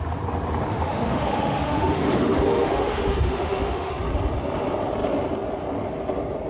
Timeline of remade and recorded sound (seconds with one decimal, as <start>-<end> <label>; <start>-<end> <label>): 0.0-0.7 recorded; 0.7-3.9 remade; 3.9-6.5 recorded